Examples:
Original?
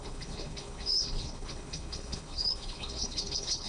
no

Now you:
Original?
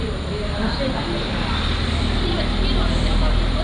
yes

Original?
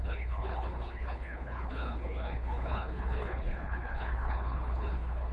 no